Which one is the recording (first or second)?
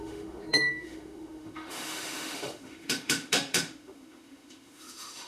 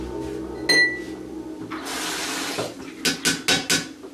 second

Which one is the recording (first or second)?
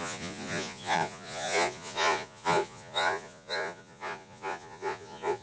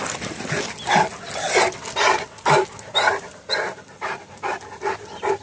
second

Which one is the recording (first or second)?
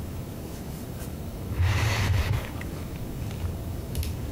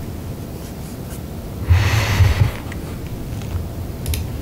second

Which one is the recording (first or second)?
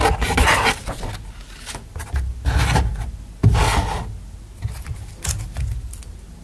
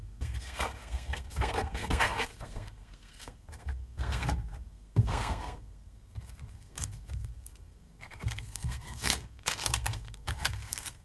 first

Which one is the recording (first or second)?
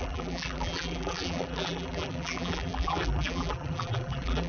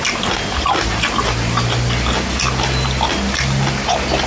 second